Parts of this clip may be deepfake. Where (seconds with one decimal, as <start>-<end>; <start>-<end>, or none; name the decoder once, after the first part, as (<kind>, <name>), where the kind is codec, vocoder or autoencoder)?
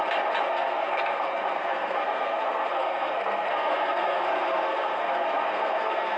0.5-6.2 (codec, SNAC)